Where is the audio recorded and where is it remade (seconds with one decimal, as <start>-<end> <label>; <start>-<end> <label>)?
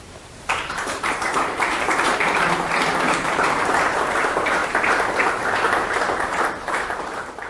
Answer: 0.0-7.5 remade